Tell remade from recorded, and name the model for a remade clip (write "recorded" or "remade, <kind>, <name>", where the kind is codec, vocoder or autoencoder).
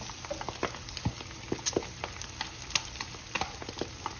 recorded